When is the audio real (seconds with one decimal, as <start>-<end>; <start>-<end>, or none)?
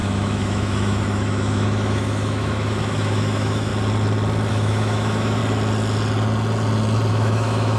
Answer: 3.7-4.5; 5.4-7.1